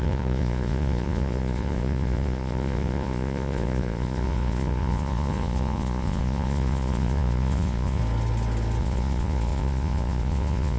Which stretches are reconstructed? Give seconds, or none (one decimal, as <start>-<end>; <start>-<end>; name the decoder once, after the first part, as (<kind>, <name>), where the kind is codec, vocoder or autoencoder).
0.0-8.0 (vocoder, Vocos); 8.8-10.8